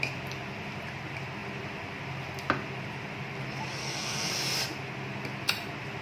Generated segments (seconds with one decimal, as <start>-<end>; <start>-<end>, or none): 3.8-4.3

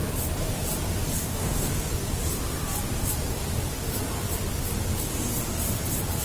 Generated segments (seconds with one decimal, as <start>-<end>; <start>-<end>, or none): 1.2-1.7

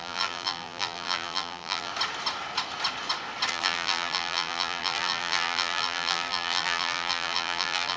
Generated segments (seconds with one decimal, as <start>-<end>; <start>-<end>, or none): 0.0-1.9; 3.5-8.0

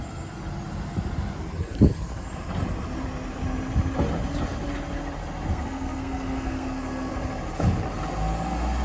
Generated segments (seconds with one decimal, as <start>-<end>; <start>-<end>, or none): 5.5-7.1

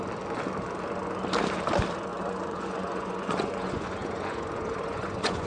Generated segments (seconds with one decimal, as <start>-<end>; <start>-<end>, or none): 2.1-5.5

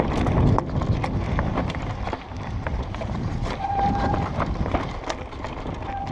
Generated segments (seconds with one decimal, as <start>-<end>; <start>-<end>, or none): 2.7-4.3

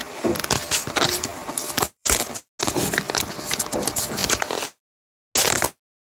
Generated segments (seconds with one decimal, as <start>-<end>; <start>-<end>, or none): 0.0-2.4